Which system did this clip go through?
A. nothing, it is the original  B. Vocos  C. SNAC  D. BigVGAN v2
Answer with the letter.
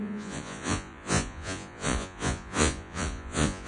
B